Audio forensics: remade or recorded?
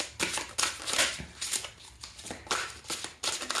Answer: recorded